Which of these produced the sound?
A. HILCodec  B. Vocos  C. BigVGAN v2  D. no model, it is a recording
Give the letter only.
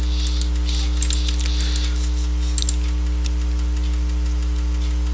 D